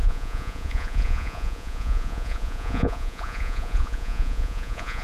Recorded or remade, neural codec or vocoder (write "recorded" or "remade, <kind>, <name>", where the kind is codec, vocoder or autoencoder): remade, vocoder, Vocos